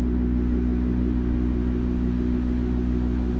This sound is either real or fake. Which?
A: fake